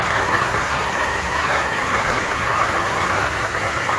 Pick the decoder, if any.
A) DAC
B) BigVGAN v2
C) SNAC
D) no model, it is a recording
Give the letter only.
C